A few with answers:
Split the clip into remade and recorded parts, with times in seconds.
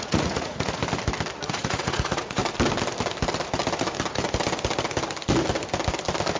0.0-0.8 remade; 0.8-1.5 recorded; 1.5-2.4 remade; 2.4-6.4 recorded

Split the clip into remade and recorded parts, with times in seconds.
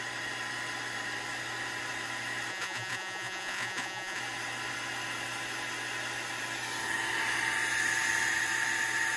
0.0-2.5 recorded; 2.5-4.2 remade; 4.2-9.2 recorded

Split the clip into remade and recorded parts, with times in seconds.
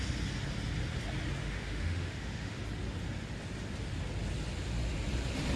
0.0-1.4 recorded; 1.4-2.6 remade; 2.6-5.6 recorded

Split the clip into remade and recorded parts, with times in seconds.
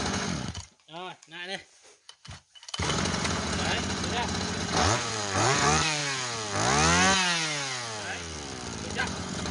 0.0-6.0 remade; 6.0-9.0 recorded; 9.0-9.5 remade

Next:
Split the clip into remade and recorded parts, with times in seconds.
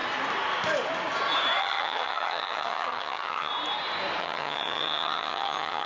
0.0-1.6 recorded; 1.6-3.5 remade; 3.5-4.2 recorded; 4.2-5.9 remade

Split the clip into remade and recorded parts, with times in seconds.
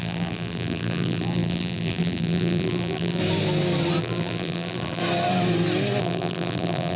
0.0-3.2 remade; 3.2-4.0 recorded; 4.0-5.0 remade; 5.0-6.0 recorded; 6.0-7.0 remade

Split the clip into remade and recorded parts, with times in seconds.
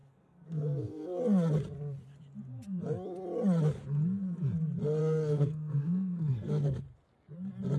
0.0-1.2 remade; 1.2-5.0 recorded; 5.0-6.8 remade; 6.8-7.8 recorded